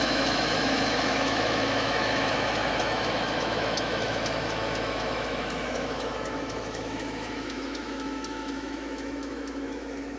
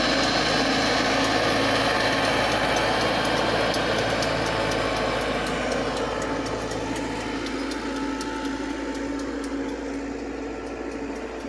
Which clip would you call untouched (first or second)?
second